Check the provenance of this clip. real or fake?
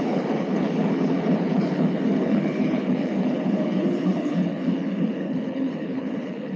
fake